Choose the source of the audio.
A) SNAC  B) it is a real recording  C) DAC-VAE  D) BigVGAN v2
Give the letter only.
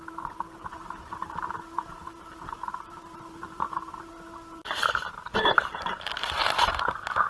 D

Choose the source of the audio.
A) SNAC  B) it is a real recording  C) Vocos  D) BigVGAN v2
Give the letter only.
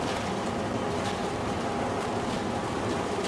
D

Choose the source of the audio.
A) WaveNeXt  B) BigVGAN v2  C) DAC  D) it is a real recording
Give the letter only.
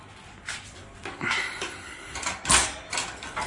D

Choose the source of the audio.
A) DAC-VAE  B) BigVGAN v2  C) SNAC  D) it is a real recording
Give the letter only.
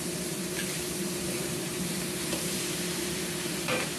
B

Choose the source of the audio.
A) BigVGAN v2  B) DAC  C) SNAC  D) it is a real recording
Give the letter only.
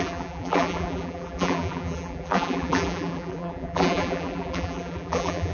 A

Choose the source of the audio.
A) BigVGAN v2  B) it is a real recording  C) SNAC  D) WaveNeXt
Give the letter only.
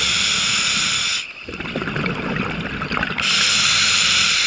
B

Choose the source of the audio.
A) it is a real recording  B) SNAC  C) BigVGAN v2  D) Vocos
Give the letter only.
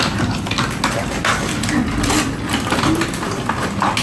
A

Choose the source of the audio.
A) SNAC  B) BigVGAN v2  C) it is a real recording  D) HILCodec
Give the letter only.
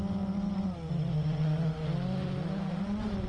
C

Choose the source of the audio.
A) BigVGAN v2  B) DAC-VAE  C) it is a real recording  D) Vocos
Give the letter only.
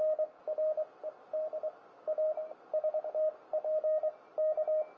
C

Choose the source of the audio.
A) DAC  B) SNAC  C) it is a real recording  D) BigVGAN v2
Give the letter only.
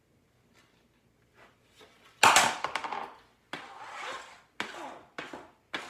C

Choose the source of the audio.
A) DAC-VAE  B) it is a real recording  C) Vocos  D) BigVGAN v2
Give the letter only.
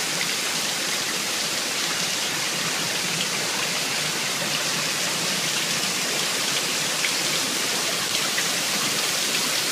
B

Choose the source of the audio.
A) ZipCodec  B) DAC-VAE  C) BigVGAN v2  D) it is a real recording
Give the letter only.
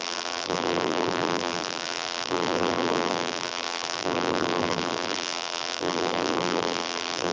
C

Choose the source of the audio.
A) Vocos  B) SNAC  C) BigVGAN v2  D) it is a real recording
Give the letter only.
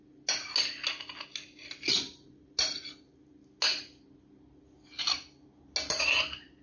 D